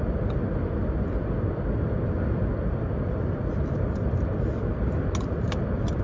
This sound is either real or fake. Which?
real